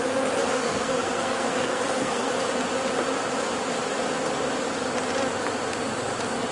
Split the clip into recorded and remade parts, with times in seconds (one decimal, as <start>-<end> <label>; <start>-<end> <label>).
0.0-0.5 recorded; 0.5-2.3 remade; 2.3-6.5 recorded